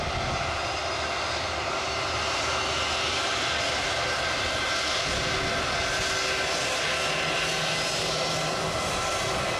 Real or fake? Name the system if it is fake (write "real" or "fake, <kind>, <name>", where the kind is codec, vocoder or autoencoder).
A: real